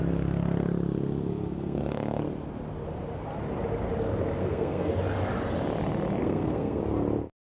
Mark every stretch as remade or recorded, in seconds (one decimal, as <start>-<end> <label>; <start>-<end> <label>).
0.0-1.3 recorded; 1.3-2.2 remade; 2.2-4.4 recorded; 4.4-4.9 remade; 4.9-6.2 recorded; 6.2-6.8 remade; 6.8-7.4 recorded